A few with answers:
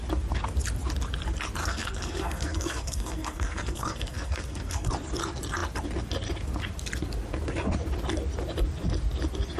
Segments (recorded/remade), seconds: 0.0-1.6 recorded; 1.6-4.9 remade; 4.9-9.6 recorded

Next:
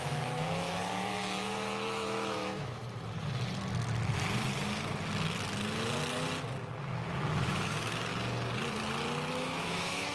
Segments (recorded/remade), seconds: 0.0-2.8 remade; 2.8-6.8 recorded; 6.8-8.1 remade; 8.1-9.3 recorded; 9.3-10.1 remade